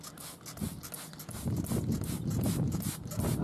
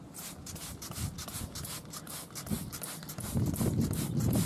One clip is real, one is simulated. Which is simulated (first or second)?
second